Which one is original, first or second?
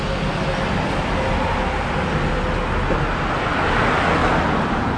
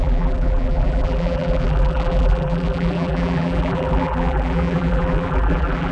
first